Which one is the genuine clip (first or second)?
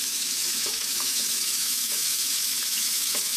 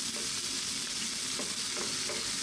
second